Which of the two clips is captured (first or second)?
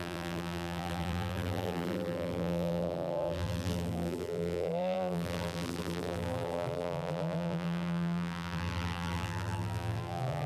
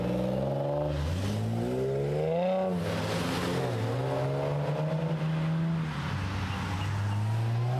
second